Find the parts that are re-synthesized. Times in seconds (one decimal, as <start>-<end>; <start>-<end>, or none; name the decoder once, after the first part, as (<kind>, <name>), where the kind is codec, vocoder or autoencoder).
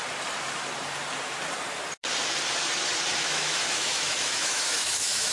3.2-5.3 (autoencoder, DAC-VAE)